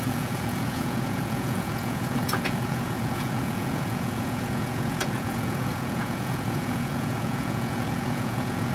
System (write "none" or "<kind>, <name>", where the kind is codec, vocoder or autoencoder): vocoder, Vocos